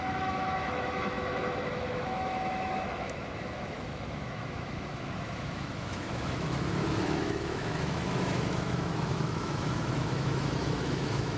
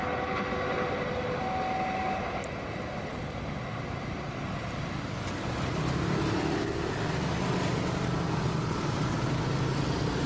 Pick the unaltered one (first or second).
second